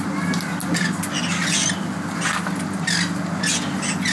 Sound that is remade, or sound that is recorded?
recorded